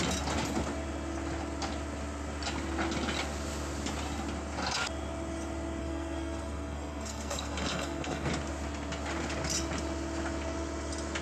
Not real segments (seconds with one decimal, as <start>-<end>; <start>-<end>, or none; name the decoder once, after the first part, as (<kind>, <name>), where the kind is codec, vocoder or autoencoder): 5.8-8.3 (codec, SNAC)